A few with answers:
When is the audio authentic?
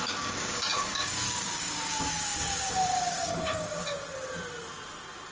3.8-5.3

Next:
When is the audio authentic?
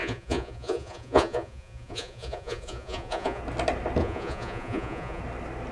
3.4-4.0; 5.2-5.7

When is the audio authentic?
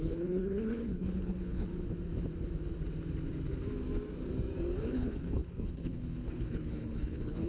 1.7-4.8